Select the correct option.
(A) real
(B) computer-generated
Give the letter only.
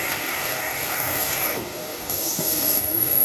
B